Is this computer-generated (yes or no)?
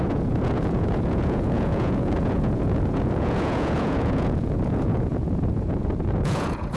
yes